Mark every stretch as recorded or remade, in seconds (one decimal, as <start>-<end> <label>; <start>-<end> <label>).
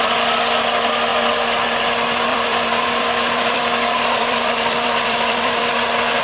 0.0-2.3 recorded; 2.3-5.7 remade; 5.7-6.2 recorded